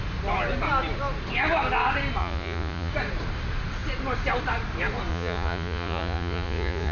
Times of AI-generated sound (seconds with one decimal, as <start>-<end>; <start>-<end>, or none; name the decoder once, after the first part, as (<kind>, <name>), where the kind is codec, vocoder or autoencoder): 2.2-2.9 (vocoder, Vocos); 5.1-6.9